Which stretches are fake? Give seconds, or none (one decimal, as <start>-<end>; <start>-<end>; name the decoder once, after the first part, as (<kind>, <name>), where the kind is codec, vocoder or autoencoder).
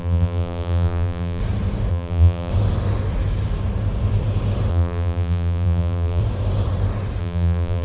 0.0-1.4 (vocoder, BigVGAN v2); 1.9-2.5; 4.7-6.2; 7.2-7.8